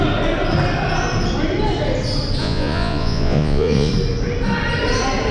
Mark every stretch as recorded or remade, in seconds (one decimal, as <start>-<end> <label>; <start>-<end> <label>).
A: 0.0-2.4 recorded; 2.4-3.9 remade; 3.9-5.3 recorded